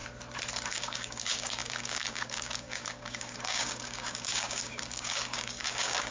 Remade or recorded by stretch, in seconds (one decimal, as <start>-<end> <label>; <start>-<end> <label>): 0.0-0.7 recorded; 0.7-6.1 remade